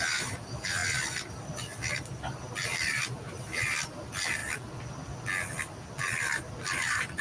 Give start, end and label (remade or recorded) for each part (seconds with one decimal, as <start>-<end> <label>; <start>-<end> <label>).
0.0-0.8 remade; 0.8-1.4 recorded; 1.4-4.4 remade; 4.4-5.6 recorded; 5.6-7.2 remade